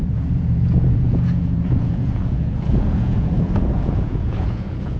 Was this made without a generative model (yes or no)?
no